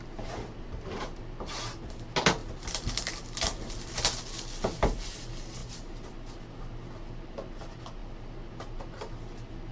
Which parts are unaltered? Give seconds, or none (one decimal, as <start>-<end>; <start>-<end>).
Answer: 0.0-9.7